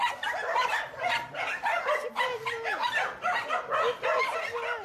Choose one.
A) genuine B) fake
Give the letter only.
A